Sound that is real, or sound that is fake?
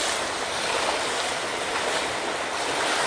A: real